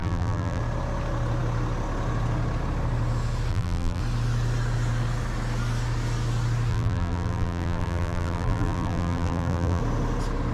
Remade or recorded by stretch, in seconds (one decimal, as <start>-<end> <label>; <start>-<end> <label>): 0.0-0.6 remade; 0.6-3.5 recorded; 3.5-4.0 remade; 4.0-6.7 recorded; 6.7-9.8 remade; 9.8-10.5 recorded